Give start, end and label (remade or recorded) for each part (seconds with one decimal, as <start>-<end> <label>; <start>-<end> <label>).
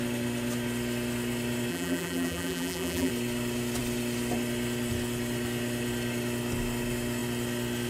0.0-1.7 recorded; 1.7-3.1 remade; 3.1-7.9 recorded